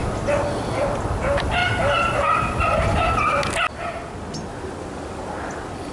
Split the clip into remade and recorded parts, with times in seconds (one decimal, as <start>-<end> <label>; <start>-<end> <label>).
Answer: 0.0-5.9 recorded